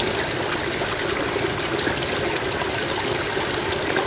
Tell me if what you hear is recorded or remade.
recorded